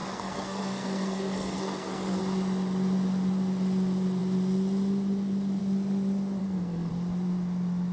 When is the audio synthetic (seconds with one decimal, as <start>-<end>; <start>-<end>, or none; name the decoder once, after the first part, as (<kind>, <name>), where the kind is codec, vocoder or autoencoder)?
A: 0.0-2.2 (codec, SNAC); 6.4-6.9